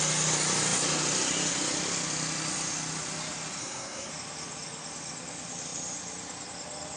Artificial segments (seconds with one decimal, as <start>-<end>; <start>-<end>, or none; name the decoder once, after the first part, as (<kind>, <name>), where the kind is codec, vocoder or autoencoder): 3.6-4.1 (codec, SNAC)